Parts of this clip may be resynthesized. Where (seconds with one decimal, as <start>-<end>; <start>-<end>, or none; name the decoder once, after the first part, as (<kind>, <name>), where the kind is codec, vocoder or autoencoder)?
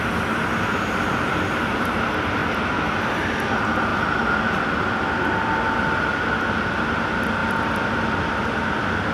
none